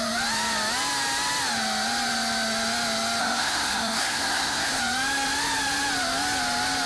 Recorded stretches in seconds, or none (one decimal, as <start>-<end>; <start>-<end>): 0.0-3.2; 4.8-6.9

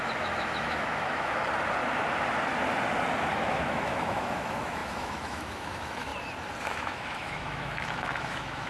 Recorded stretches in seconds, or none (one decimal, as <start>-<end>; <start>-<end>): 1.4-3.2; 6.1-6.6